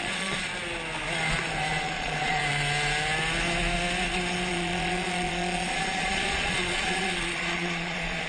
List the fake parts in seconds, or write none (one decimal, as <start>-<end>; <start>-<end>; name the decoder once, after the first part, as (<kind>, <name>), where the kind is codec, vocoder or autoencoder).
0.0-0.5 (vocoder, Vocos); 1.7-2.4; 4.5-8.3